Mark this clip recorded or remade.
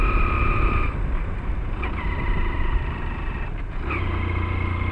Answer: recorded